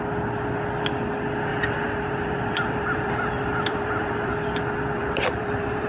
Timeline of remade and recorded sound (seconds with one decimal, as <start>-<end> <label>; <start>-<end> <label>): 0.0-1.5 recorded; 1.5-4.3 remade; 4.3-5.0 recorded; 5.0-5.9 remade